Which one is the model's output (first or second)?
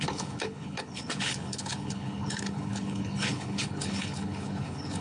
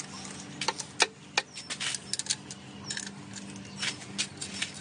first